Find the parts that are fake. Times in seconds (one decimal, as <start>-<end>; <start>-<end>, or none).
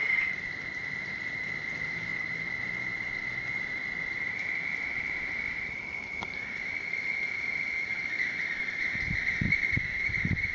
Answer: 0.0-10.5